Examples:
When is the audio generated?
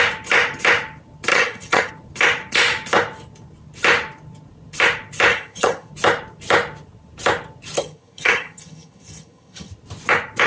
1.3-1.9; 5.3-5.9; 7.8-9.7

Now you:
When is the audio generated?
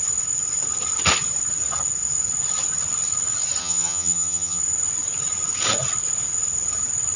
3.6-4.6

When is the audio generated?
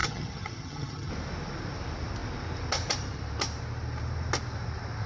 0.0-1.1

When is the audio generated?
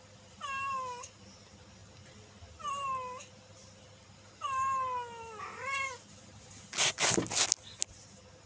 none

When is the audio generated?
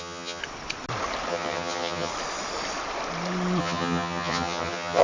0.0-0.4; 1.3-2.1; 3.6-5.0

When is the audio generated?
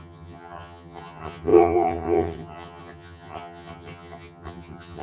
0.0-5.0